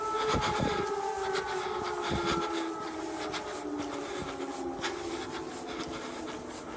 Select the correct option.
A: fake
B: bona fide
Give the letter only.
B